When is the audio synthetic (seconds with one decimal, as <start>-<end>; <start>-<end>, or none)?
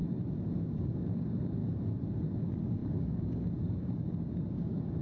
0.6-1.6; 2.4-5.0